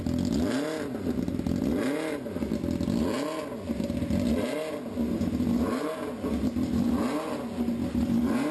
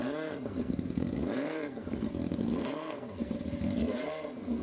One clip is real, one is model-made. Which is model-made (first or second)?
second